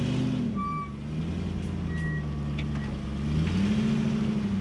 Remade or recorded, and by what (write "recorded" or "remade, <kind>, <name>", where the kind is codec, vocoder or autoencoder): recorded